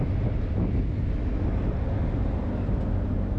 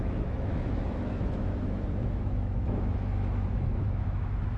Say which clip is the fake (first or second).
second